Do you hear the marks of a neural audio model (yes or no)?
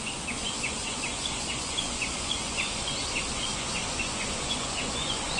yes